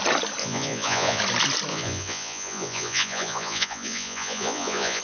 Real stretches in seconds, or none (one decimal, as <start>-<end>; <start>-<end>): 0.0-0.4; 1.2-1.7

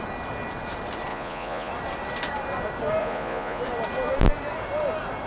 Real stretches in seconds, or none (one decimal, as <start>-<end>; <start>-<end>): 0.0-1.1; 1.7-3.0; 3.6-5.3

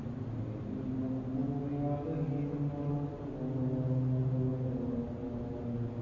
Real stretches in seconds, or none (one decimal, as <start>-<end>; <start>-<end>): 0.0-6.0

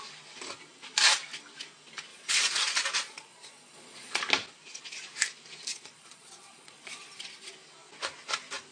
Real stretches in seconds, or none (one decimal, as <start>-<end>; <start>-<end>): 0.0-2.1; 4.2-5.7; 7.5-8.7